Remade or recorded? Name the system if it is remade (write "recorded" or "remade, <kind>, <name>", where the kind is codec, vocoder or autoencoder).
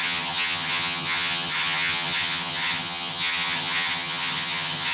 remade, vocoder, HiFi-GAN